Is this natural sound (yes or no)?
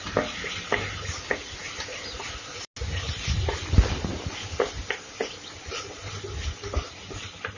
yes